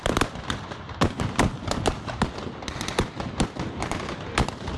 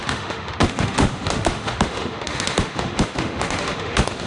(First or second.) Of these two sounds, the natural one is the first